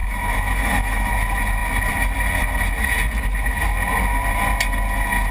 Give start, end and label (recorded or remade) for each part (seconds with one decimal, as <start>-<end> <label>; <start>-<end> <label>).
0.0-1.1 remade; 1.1-5.3 recorded